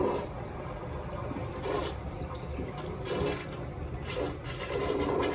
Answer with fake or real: fake